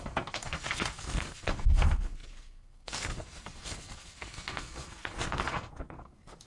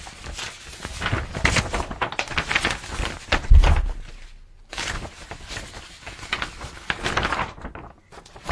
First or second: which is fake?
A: first